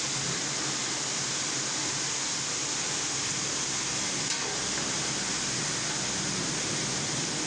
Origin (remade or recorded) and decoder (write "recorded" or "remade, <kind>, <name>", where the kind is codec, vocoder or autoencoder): recorded